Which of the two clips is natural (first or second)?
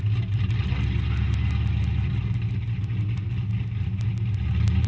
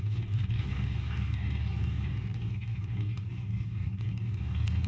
first